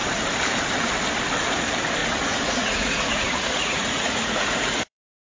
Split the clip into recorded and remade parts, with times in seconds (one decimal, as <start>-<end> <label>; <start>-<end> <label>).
0.0-2.0 recorded; 2.0-5.3 remade